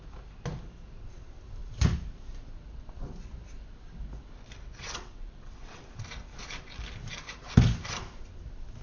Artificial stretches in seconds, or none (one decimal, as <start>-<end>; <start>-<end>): 4.7-5.8